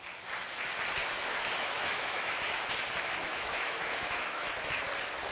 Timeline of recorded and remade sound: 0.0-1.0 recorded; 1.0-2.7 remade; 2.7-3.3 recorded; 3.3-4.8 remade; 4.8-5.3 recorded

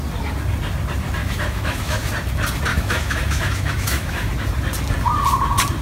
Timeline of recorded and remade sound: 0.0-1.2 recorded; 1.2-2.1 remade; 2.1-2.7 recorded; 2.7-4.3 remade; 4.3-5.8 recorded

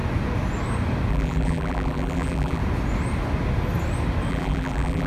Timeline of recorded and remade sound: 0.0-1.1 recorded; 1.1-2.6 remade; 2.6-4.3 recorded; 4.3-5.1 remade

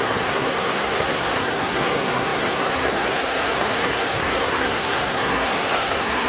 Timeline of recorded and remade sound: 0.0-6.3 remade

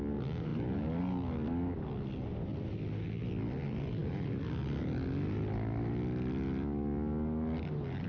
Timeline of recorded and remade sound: 0.0-8.1 recorded

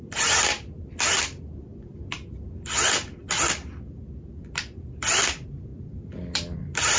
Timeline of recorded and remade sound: 0.0-1.7 remade; 1.7-4.8 recorded; 4.8-7.0 remade